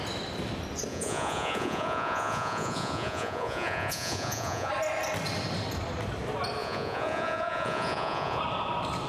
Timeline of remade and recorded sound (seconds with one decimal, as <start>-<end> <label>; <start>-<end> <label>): 0.0-0.9 recorded; 0.9-4.7 remade; 4.7-6.6 recorded; 6.6-8.4 remade; 8.4-9.1 recorded